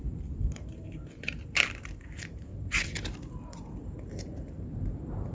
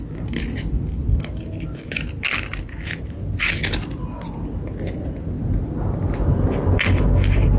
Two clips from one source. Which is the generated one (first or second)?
first